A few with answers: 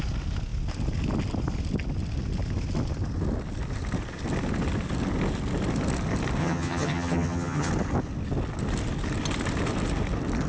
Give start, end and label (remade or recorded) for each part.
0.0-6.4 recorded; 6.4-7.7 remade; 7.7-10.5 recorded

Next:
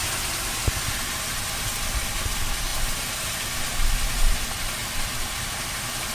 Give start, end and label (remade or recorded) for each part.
0.0-6.1 recorded

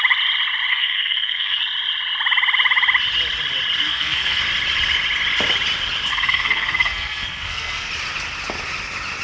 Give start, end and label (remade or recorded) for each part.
0.0-0.7 recorded; 0.7-1.6 remade; 1.6-3.8 recorded; 3.8-4.4 remade; 4.4-6.1 recorded; 6.1-7.9 remade; 7.9-9.2 recorded

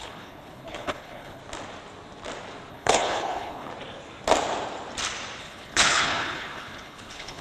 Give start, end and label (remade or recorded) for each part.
0.0-1.4 remade; 1.4-2.7 recorded; 2.7-3.7 remade; 3.7-5.4 recorded; 5.4-7.4 remade

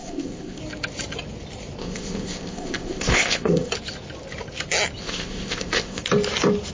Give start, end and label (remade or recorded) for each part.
0.0-0.6 remade; 0.6-1.8 recorded; 1.8-3.7 remade; 3.7-5.0 recorded; 5.0-6.0 remade; 6.0-6.7 recorded

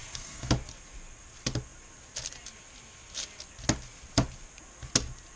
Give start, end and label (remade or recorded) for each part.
0.0-0.5 remade; 0.5-5.4 recorded